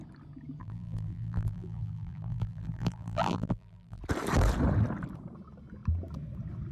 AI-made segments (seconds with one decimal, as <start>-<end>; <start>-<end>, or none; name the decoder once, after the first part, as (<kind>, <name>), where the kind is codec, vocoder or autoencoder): 0.6-4.0 (vocoder, BigVGAN v2)